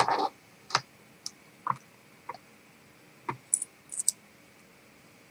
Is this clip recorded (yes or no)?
yes